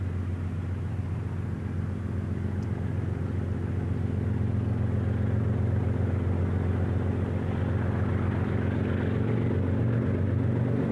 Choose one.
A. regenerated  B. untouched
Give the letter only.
B